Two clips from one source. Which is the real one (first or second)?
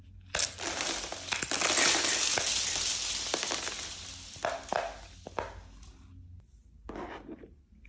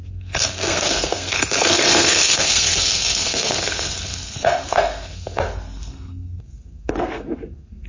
first